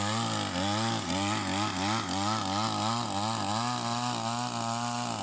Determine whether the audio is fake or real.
real